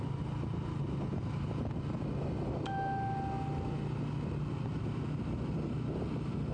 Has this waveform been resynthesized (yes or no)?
no